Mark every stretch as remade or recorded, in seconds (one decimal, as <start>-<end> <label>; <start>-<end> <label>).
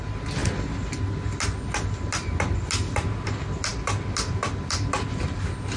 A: 0.0-5.8 recorded